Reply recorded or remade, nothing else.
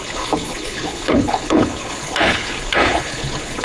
remade